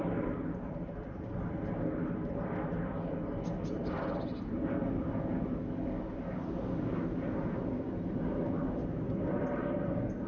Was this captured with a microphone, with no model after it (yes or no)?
yes